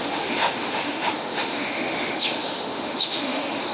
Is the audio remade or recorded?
remade